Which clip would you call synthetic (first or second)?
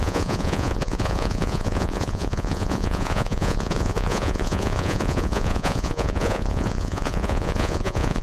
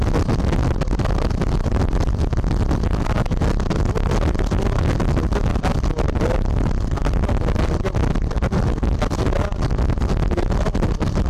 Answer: first